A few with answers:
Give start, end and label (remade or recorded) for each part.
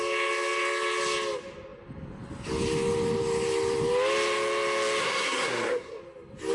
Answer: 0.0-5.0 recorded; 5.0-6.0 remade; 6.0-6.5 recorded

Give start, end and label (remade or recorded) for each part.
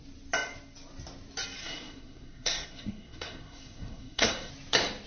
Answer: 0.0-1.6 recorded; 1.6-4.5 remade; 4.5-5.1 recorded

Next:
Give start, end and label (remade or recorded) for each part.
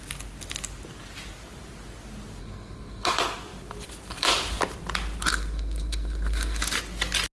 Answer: 0.0-2.4 recorded; 2.4-3.1 remade; 3.1-5.3 recorded; 5.3-6.6 remade; 6.6-7.3 recorded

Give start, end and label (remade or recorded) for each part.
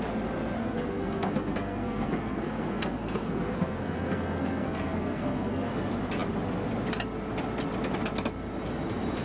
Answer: 0.0-0.6 recorded; 0.6-5.7 remade; 5.7-9.2 recorded